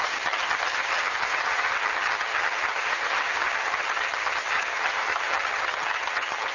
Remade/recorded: remade